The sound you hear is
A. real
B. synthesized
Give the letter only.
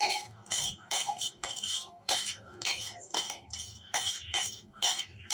B